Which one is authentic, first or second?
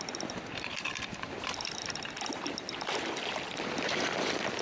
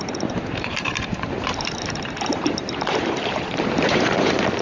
first